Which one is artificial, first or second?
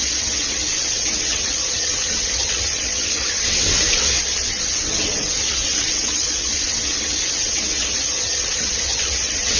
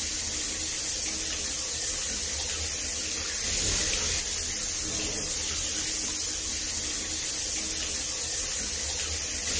first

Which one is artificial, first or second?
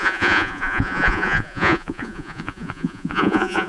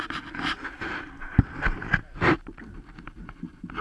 first